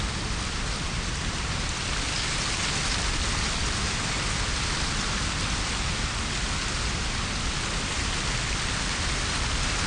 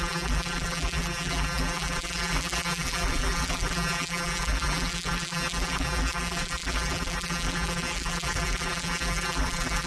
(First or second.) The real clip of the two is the first